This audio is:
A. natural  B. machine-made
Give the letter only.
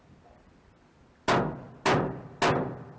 A